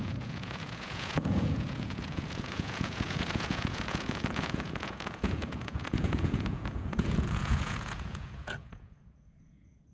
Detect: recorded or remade remade